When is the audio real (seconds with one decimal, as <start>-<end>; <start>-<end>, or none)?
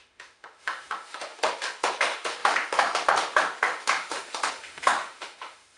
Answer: none